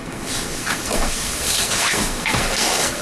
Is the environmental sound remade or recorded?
remade